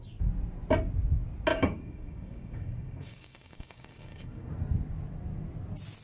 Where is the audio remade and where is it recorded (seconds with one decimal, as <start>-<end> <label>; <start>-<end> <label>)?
0.0-1.5 recorded; 1.5-4.5 remade; 4.5-6.0 recorded